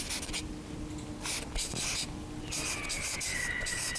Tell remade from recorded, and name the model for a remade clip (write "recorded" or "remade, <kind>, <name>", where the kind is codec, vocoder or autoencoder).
recorded